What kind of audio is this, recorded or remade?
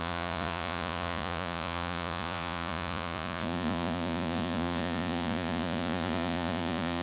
remade